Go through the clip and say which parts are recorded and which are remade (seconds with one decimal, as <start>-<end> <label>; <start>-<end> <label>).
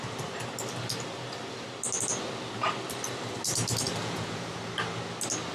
0.0-4.0 recorded; 4.0-4.6 remade; 4.6-5.5 recorded